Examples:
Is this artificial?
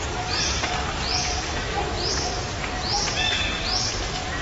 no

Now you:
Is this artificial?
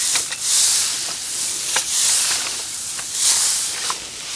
no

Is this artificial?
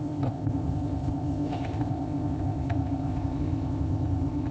yes